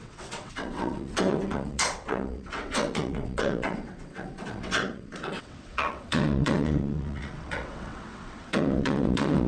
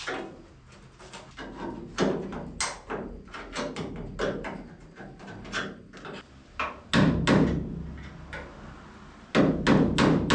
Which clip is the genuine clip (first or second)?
second